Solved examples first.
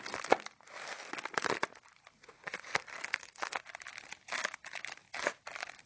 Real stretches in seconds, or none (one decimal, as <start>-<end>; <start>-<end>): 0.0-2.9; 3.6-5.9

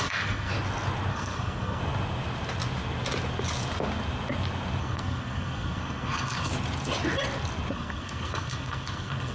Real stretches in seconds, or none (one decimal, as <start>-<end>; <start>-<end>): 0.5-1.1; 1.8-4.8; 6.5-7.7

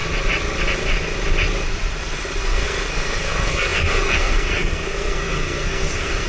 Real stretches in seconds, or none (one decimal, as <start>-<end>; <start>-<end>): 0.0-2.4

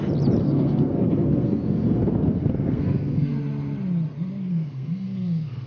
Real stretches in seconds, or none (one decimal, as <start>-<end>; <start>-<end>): 0.0-0.4; 3.3-4.5